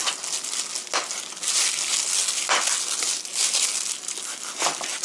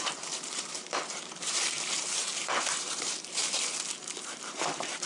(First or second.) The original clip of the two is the first